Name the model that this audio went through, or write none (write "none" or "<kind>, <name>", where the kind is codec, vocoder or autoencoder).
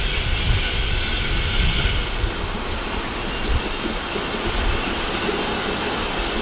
none